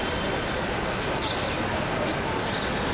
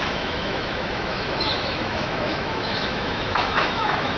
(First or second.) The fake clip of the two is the second